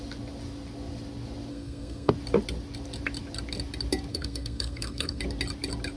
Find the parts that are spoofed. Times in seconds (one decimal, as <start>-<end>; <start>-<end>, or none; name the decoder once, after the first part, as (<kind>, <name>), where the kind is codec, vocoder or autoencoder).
1.5-2.1 (codec, SNAC); 4.1-5.2